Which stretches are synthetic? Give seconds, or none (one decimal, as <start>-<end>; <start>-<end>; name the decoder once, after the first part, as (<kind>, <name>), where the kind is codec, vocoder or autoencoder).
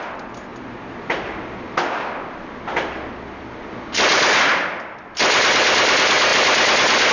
none